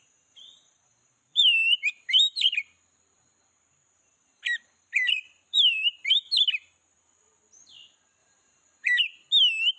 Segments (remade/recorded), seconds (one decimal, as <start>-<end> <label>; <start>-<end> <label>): 0.0-0.9 recorded; 0.9-6.0 remade; 6.0-8.2 recorded; 8.2-9.0 remade; 9.0-9.8 recorded